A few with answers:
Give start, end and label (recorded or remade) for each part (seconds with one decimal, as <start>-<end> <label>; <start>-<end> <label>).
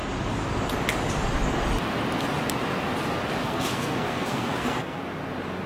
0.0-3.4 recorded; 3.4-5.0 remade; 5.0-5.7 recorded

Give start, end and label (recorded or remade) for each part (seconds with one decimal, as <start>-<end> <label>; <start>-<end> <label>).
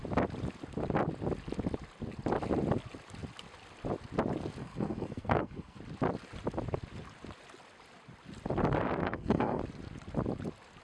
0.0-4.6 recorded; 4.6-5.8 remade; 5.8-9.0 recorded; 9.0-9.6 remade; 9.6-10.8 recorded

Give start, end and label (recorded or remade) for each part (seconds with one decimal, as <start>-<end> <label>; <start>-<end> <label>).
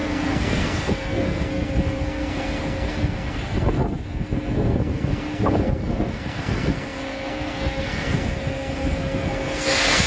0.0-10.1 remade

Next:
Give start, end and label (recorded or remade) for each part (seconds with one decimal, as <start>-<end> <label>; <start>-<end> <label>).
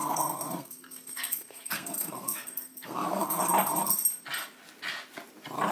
0.0-3.4 remade; 3.4-5.7 recorded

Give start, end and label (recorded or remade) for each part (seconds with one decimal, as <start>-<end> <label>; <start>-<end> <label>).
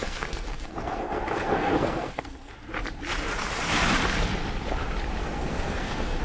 0.0-2.5 remade; 2.5-5.2 recorded; 5.2-6.2 remade